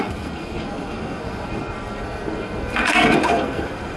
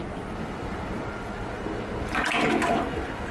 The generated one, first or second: first